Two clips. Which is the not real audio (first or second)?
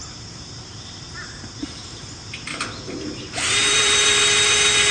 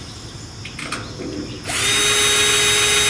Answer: first